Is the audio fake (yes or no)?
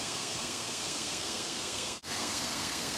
yes